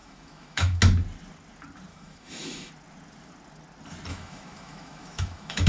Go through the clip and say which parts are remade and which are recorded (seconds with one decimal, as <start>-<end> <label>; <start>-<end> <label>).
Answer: 0.0-0.8 remade; 0.8-1.9 recorded; 1.9-2.7 remade; 2.7-4.1 recorded; 4.1-5.7 remade